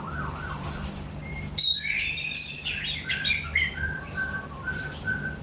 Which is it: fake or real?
fake